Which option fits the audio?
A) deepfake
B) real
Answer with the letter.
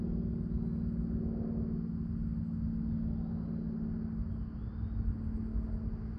B